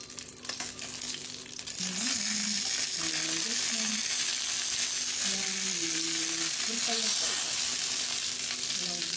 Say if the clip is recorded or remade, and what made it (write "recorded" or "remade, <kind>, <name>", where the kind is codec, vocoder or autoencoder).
recorded